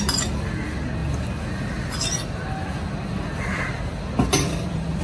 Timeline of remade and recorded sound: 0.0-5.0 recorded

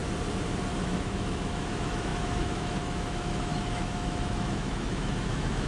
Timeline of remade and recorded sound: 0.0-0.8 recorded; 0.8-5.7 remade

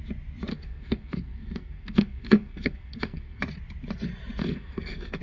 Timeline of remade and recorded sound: 0.0-0.5 recorded; 0.5-3.4 remade; 3.4-4.4 recorded; 4.4-5.2 remade

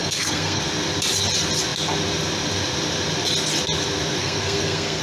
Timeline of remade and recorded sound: 0.0-0.6 remade; 0.6-4.2 recorded; 4.2-5.0 remade

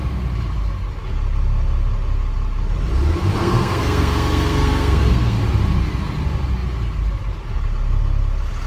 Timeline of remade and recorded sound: 0.0-3.4 recorded; 3.4-5.4 remade; 5.4-8.7 recorded